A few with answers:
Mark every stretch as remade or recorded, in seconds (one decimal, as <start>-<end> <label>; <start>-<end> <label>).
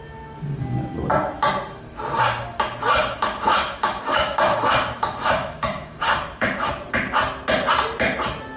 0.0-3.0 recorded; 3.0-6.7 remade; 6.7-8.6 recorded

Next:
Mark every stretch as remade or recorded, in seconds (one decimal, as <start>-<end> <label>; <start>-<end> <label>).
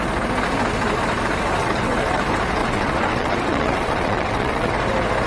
0.0-1.6 recorded; 1.6-2.2 remade; 2.2-2.6 recorded; 2.6-4.7 remade; 4.7-5.3 recorded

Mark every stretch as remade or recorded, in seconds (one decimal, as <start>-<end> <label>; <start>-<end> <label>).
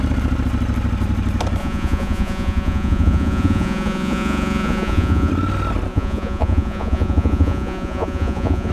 0.0-1.6 recorded; 1.6-5.3 remade; 5.3-5.9 recorded; 5.9-8.7 remade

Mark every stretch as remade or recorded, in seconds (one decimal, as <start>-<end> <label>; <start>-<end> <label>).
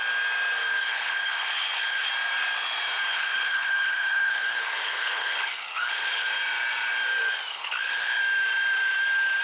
0.0-0.8 recorded; 0.8-2.1 remade; 2.1-3.1 recorded; 3.1-6.3 remade; 6.3-7.5 recorded; 7.5-8.2 remade; 8.2-9.4 recorded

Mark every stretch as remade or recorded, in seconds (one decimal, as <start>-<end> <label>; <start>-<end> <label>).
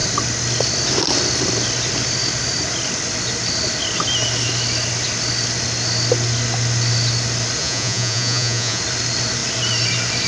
0.0-7.6 recorded; 7.6-8.8 remade; 8.8-10.3 recorded